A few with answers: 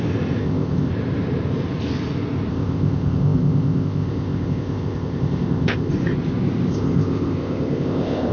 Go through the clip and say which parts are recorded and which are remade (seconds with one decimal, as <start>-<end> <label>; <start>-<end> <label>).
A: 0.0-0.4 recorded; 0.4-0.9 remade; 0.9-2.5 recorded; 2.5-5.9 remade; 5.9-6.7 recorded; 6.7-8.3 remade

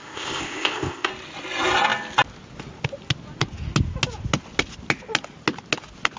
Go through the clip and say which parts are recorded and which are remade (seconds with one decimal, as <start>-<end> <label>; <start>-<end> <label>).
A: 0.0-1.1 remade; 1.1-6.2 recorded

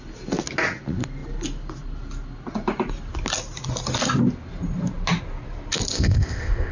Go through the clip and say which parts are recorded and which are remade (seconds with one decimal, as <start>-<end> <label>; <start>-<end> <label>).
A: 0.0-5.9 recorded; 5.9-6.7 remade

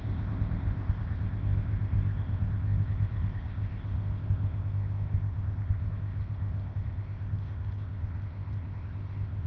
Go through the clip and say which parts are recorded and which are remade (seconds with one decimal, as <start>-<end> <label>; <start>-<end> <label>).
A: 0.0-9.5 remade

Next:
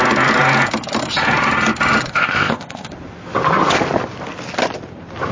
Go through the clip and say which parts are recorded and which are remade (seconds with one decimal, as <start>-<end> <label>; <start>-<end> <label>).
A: 0.0-2.1 recorded; 2.1-2.9 remade; 2.9-5.3 recorded

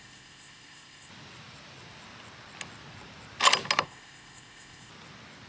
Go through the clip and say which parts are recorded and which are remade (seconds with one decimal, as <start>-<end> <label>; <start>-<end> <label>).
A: 0.0-1.1 remade; 1.1-3.8 recorded; 3.8-4.9 remade; 4.9-5.5 recorded

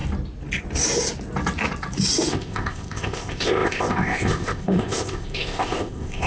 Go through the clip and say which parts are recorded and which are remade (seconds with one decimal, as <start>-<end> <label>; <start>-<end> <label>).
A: 0.0-2.3 recorded; 2.3-6.3 remade

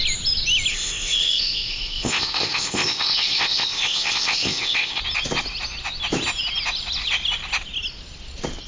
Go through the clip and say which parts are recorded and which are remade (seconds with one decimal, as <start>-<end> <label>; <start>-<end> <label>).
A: 0.0-0.7 recorded; 0.7-5.0 remade; 5.0-8.7 recorded